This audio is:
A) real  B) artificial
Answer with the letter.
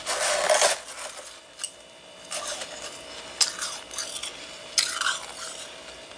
A